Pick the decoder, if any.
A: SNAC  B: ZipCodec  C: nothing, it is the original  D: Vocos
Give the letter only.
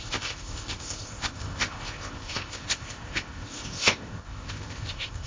B